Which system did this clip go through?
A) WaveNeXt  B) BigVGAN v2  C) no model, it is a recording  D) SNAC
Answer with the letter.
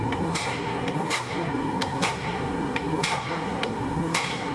D